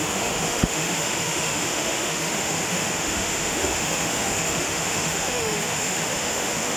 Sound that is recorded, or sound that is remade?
remade